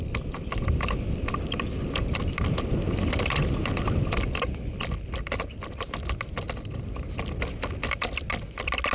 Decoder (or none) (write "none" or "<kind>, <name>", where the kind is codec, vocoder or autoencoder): none